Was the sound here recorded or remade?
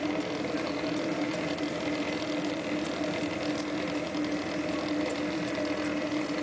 recorded